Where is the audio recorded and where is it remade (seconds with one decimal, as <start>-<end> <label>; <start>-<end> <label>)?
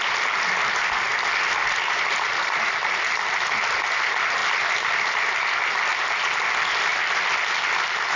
0.0-8.2 recorded